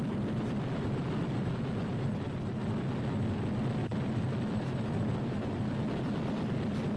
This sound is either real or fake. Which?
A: real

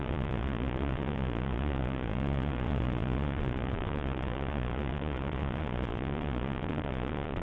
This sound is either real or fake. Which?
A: fake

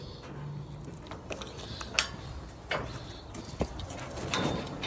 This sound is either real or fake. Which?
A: real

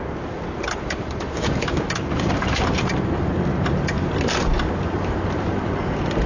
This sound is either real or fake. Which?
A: real